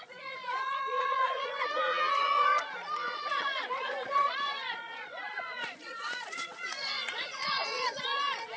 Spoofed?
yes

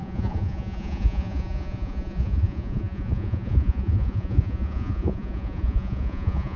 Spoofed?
yes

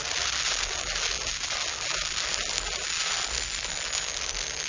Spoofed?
no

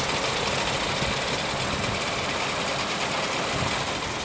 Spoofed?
no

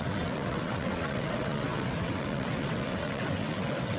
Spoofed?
yes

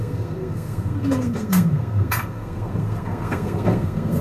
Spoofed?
yes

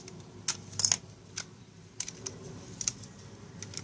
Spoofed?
no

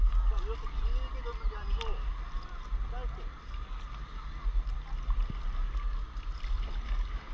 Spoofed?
no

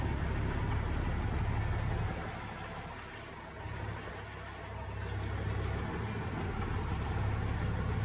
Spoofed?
no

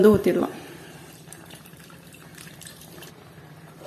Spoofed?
yes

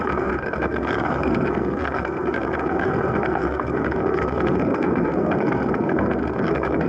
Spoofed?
yes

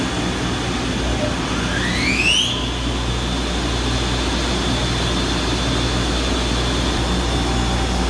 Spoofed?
no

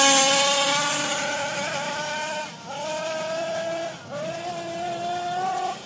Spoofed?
no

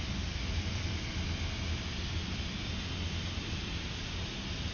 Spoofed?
no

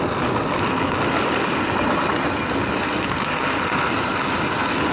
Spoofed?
no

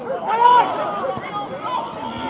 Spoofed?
yes